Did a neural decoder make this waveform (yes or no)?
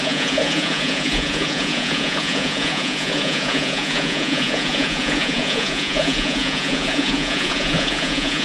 yes